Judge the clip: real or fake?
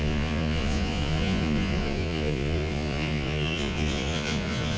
fake